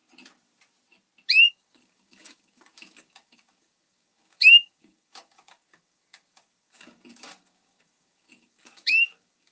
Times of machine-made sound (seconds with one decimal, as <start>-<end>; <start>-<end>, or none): 1.5-9.5